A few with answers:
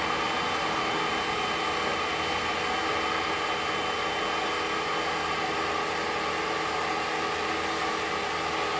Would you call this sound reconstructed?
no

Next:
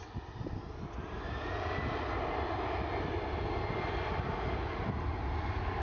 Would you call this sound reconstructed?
no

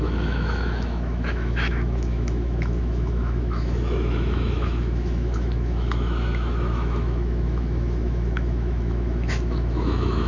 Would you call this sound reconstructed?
yes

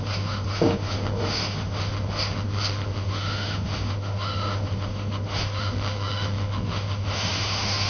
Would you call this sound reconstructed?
yes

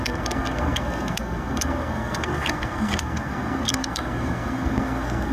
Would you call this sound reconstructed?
yes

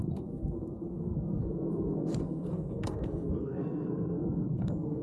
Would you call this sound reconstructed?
yes